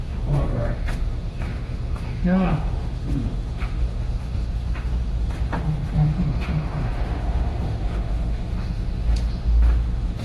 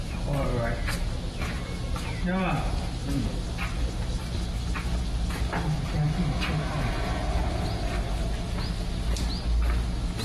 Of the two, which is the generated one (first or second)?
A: first